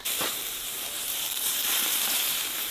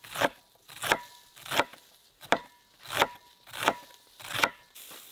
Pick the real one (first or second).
second